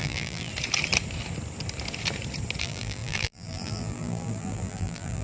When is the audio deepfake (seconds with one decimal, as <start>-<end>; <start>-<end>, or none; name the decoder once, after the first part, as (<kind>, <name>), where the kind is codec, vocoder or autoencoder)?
0.0-0.5 (vocoder, BigVGAN v2); 2.6-5.2